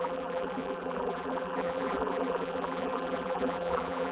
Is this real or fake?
fake